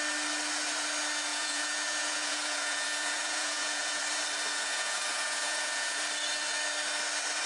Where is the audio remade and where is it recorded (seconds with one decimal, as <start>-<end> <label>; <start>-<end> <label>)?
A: 0.0-1.3 recorded; 1.3-4.0 remade; 4.0-4.5 recorded; 4.5-6.0 remade; 6.0-7.5 recorded